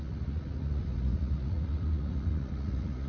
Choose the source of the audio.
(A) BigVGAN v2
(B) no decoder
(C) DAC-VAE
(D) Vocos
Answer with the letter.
D